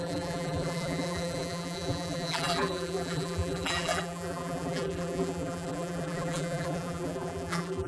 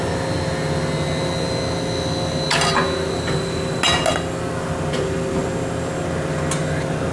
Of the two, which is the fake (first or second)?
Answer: first